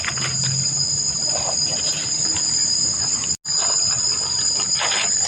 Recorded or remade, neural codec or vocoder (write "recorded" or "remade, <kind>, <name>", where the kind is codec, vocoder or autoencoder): recorded